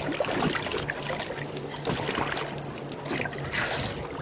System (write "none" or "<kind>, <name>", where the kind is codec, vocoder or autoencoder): none